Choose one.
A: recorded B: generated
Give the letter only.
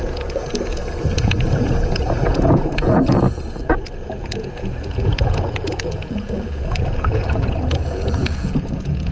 B